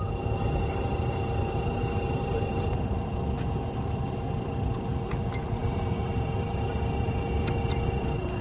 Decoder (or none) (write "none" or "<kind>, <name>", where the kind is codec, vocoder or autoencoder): vocoder, BigVGAN v2